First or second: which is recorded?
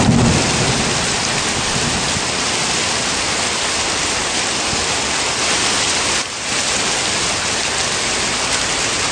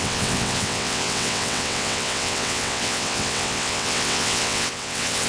first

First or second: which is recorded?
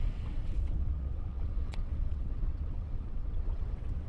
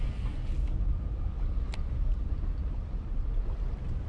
second